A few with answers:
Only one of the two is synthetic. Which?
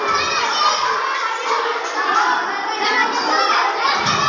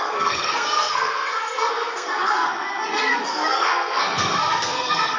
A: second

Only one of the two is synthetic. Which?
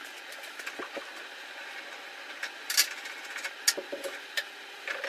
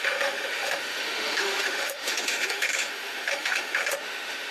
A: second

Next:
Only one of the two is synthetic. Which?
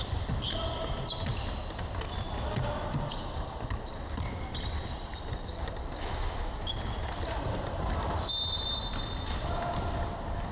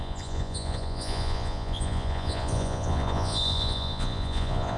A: second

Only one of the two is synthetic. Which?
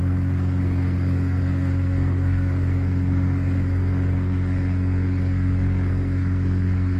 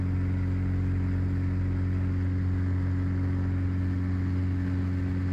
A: first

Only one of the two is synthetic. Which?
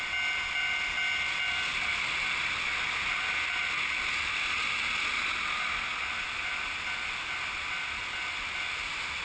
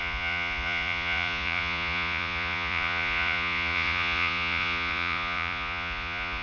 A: second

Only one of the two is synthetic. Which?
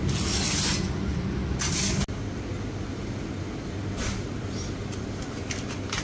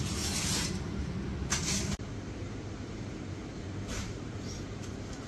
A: second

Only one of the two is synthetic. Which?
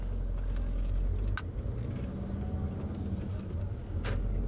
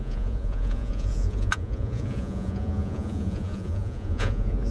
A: second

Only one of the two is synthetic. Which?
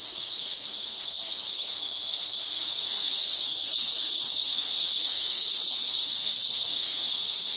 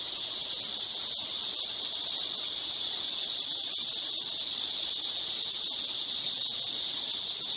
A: first